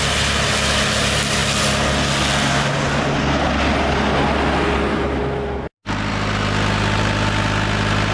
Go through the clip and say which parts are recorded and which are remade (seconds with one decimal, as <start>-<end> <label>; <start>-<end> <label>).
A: 0.0-8.1 recorded